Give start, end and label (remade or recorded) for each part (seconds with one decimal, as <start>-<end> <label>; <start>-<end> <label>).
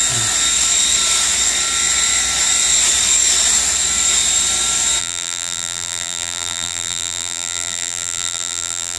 0.0-5.0 recorded; 5.0-9.0 remade